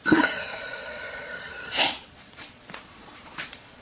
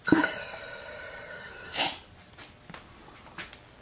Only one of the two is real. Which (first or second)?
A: second